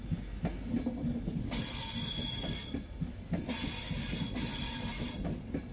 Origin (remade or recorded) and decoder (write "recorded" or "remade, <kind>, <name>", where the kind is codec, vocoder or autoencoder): recorded